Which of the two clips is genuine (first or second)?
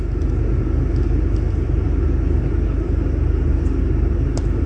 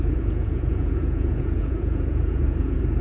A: first